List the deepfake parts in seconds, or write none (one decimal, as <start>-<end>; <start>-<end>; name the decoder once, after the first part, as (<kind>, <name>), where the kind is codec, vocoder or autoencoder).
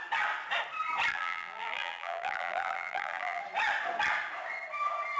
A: 1.1-3.4 (vocoder, BigVGAN v2)